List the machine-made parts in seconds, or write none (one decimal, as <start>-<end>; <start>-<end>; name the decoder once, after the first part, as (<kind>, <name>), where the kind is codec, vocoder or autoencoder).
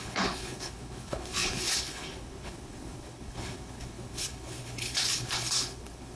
0.0-6.2 (codec, HILCodec)